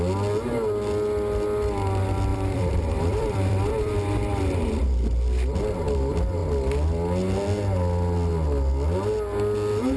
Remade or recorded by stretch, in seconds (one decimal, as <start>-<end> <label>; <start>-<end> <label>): 0.0-2.3 recorded; 2.3-3.9 remade; 3.9-10.0 recorded